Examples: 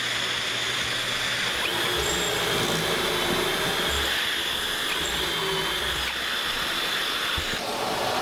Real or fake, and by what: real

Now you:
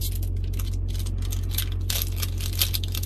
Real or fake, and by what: real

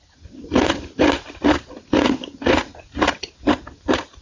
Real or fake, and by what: real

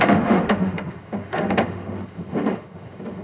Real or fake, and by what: fake, autoencoder, DAC-VAE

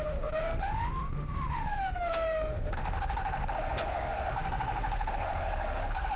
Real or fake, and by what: fake, autoencoder, DAC-VAE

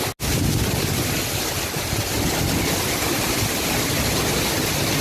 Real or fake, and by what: real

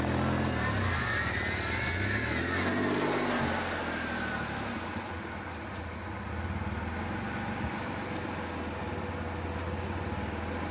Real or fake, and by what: real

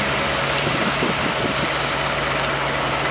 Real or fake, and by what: real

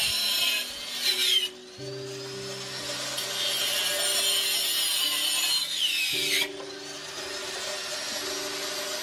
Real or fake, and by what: real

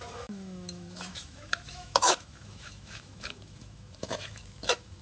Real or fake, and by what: fake, autoencoder, DAC-VAE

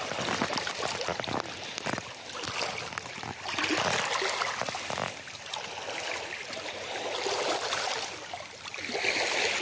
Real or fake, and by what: real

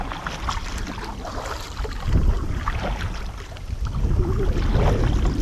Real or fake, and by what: real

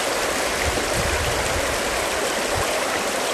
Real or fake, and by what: real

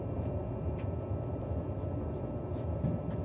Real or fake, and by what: real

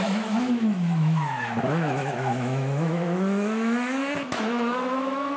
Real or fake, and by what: fake, autoencoder, DAC-VAE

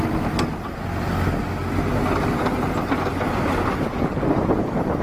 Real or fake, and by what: real